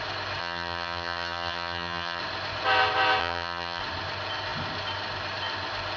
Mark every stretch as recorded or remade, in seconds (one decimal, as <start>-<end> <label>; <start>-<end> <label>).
0.0-0.4 recorded; 0.4-2.2 remade; 2.2-3.2 recorded; 3.2-3.8 remade; 3.8-6.0 recorded

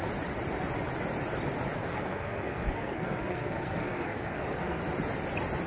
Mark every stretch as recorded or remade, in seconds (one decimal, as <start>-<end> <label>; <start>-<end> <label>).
0.0-1.9 recorded; 1.9-4.8 remade; 4.8-5.7 recorded

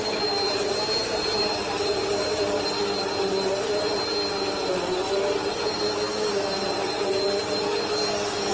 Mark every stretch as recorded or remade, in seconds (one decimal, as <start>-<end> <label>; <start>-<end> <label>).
0.0-8.5 recorded